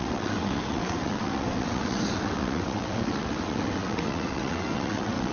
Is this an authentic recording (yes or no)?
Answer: no